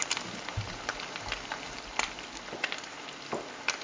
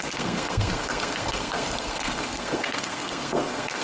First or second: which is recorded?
first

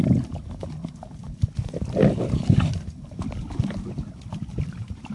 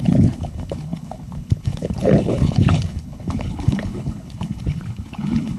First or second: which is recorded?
first